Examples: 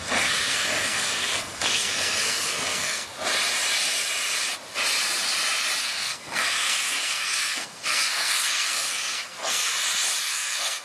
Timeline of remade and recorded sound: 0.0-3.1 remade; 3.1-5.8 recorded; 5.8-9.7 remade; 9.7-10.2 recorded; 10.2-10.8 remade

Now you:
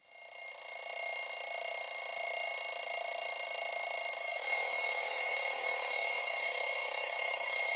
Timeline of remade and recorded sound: 0.0-4.2 recorded; 4.2-7.8 remade